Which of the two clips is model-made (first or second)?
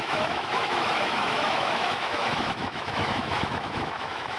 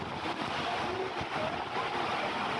first